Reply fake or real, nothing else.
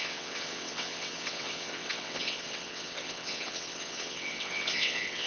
fake